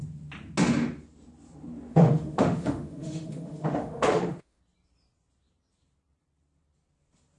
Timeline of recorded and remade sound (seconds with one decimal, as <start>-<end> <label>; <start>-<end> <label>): 0.0-1.9 recorded; 1.9-4.6 remade; 4.6-7.4 recorded